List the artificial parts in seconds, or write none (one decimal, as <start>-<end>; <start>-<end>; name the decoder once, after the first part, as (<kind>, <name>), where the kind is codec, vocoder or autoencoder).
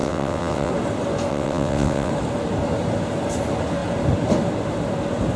0.0-0.7 (vocoder, WaveNeXt); 1.3-2.1